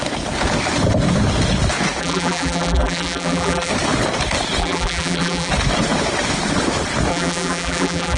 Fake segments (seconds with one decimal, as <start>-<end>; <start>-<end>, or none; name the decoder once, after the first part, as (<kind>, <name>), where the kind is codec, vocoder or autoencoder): 2.0-3.7 (vocoder, BigVGAN v2); 4.6-5.5; 7.1-8.2